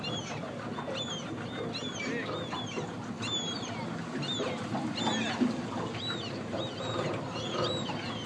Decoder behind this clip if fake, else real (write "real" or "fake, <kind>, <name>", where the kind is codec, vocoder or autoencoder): real